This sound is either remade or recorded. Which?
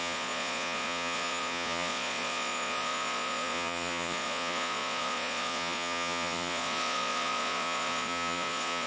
remade